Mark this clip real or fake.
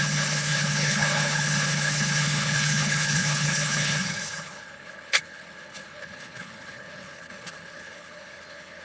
fake